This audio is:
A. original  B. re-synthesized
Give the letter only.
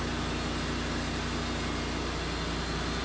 A